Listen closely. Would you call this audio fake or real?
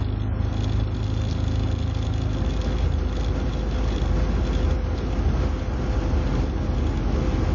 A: real